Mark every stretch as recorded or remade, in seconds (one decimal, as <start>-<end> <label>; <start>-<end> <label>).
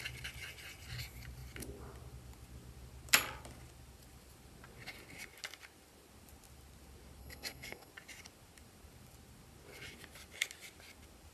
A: 0.0-7.2 recorded; 7.2-7.9 remade; 7.9-11.3 recorded